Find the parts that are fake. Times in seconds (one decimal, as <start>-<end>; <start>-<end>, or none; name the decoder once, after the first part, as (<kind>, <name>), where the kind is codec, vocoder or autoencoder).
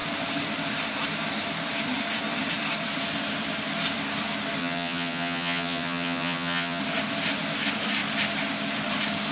4.6-6.8 (vocoder, HiFi-GAN)